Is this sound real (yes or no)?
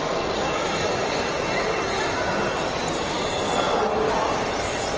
yes